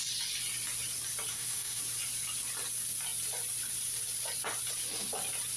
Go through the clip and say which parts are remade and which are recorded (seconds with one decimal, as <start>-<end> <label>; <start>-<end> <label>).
0.0-1.3 recorded; 1.3-1.8 remade; 1.8-5.6 recorded